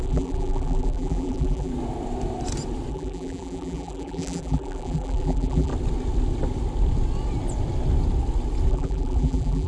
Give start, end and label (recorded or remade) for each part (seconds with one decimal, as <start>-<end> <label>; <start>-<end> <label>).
0.0-1.7 remade; 1.7-2.9 recorded; 2.9-5.7 remade; 5.7-8.7 recorded; 8.7-9.7 remade